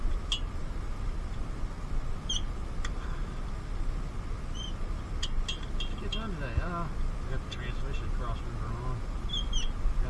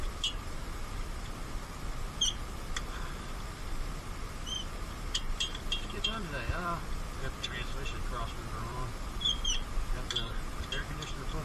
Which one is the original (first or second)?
first